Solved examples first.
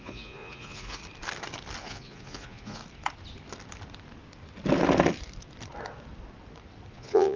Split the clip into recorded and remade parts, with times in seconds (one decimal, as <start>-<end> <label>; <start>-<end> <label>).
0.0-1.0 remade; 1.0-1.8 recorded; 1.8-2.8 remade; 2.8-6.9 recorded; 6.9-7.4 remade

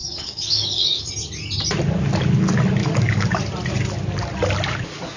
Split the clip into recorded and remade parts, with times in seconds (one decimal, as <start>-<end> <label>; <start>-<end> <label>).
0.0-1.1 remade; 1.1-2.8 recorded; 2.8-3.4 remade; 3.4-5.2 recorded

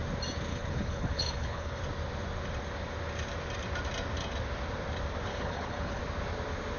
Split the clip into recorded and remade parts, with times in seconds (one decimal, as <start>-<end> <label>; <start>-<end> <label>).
0.0-0.5 recorded; 0.5-1.8 remade; 1.8-5.3 recorded; 5.3-6.0 remade; 6.0-6.8 recorded